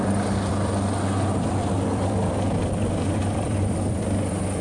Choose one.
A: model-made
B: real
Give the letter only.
A